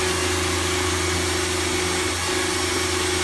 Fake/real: real